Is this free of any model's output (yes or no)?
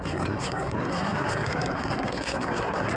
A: no